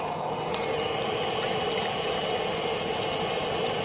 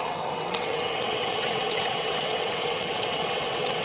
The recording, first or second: first